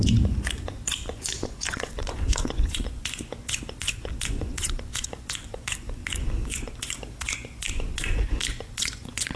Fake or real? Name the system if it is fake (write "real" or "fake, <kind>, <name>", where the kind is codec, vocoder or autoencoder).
fake, vocoder, Vocos